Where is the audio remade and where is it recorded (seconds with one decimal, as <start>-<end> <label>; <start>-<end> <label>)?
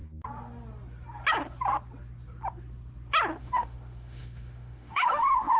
0.0-3.4 recorded; 3.4-5.6 remade